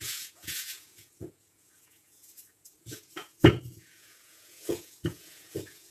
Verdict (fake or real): fake